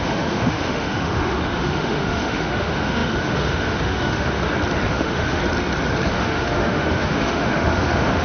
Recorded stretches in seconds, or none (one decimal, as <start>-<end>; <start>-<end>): 4.4-4.9; 5.4-6.1